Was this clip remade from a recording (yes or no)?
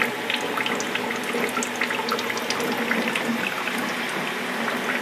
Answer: no